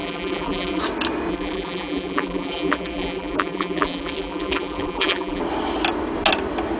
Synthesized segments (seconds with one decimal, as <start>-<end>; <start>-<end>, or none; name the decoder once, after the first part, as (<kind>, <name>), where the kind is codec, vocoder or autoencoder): 0.0-0.8 (vocoder, BigVGAN v2); 1.3-5.4